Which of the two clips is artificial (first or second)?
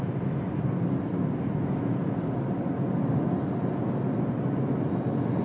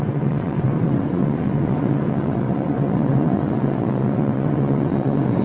second